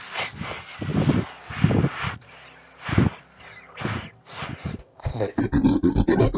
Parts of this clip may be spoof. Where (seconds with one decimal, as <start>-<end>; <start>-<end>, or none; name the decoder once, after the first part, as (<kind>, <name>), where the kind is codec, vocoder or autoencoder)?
4.8-5.4 (codec, ZipCodec)